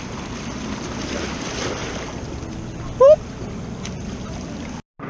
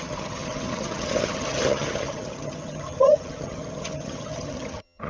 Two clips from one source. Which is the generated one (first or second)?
second